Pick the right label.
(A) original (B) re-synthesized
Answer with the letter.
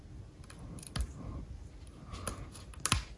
A